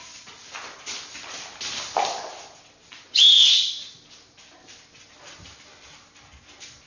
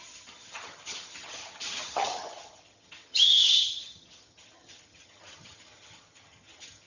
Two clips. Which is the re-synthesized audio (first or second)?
second